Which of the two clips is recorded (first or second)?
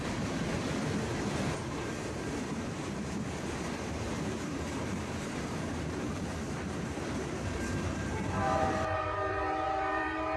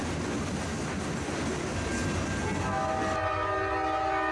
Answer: second